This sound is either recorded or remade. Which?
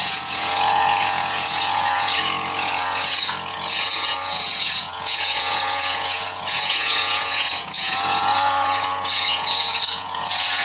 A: remade